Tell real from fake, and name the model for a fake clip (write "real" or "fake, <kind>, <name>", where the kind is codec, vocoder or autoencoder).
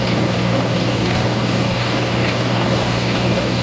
fake, codec, DAC